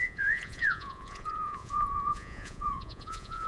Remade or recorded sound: remade